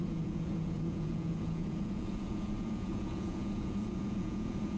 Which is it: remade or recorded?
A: remade